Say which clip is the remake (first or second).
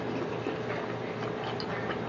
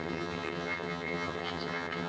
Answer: second